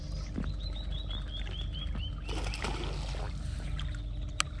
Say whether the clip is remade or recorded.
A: recorded